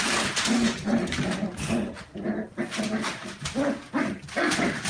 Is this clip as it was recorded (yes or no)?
yes